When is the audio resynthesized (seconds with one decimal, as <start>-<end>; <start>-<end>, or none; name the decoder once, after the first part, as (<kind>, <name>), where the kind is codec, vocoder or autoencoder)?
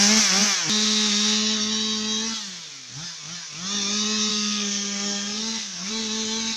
4.3-5.9 (codec, SNAC)